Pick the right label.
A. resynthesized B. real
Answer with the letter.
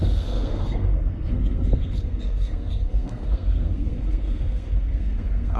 A